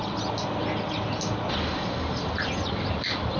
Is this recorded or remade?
recorded